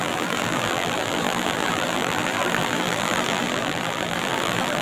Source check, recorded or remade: remade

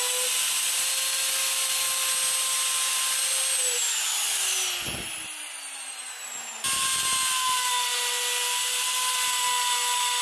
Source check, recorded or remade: recorded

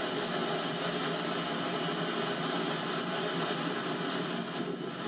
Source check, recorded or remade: recorded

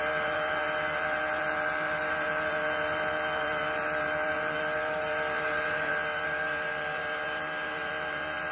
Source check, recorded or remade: remade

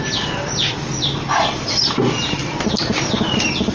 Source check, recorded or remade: recorded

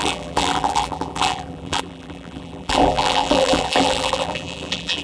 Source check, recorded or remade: remade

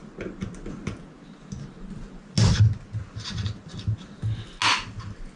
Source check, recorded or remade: recorded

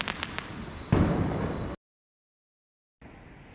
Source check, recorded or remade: recorded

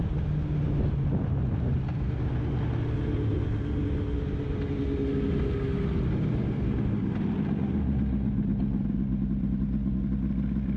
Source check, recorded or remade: recorded